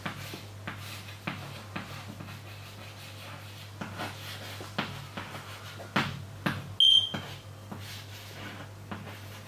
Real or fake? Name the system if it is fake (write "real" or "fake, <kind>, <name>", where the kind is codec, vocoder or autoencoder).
real